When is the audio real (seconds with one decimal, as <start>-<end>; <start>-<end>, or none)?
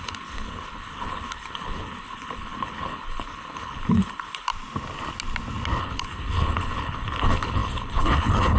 4.5-5.8